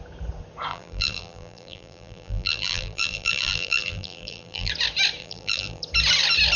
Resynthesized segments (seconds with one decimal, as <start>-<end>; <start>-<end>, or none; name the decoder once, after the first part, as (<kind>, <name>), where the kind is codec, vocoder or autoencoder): 0.7-4.7 (vocoder, BigVGAN v2); 5.2-5.8